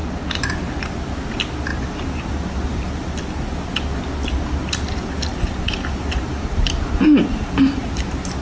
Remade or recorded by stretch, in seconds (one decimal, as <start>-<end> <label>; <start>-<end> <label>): 0.0-0.5 remade; 0.5-1.7 recorded; 1.7-3.2 remade; 3.2-5.3 recorded; 5.3-7.8 remade; 7.8-8.4 recorded